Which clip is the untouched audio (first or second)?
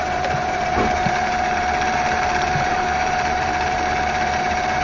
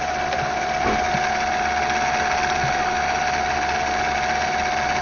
second